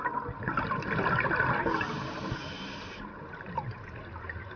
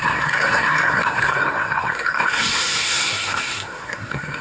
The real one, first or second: first